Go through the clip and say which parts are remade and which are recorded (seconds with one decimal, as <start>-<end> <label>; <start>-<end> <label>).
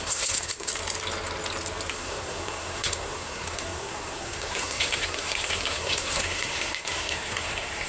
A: 0.0-0.7 remade; 0.7-1.9 recorded; 1.9-7.9 remade